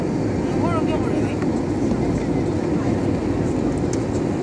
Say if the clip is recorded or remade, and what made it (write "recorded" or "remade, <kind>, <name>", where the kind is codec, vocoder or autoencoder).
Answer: recorded